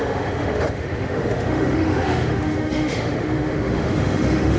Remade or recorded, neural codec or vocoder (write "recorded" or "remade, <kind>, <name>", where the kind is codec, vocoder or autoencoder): remade, autoencoder, DAC-VAE